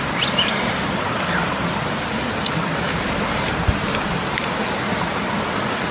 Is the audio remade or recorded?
recorded